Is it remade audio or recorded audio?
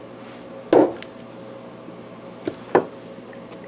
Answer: recorded